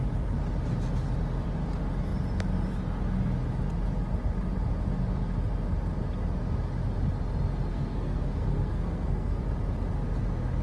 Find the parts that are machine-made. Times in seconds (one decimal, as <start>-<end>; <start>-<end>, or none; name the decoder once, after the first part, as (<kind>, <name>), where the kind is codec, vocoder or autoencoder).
7.7-9.4 (codec, SNAC)